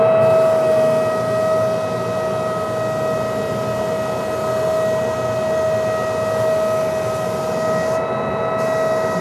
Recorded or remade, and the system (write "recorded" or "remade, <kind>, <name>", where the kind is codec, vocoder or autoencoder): recorded